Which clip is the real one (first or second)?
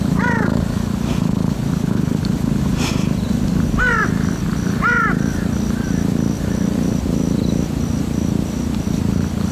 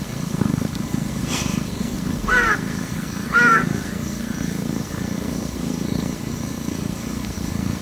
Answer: first